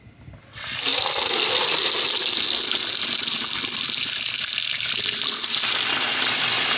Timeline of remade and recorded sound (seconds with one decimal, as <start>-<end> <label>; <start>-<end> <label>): 0.0-6.8 recorded